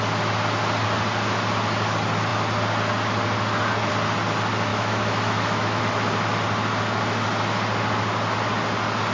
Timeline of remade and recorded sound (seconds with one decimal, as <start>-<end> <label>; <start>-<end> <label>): 0.0-4.7 recorded; 4.7-5.8 remade; 5.8-9.1 recorded